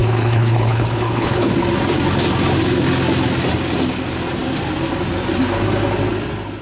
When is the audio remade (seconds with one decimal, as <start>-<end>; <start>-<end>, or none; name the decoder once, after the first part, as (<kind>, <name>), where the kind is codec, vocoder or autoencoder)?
0.0-1.5 (codec, HILCodec)